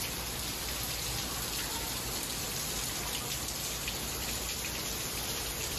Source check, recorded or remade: recorded